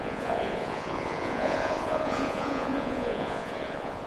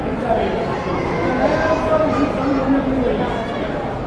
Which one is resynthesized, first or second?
first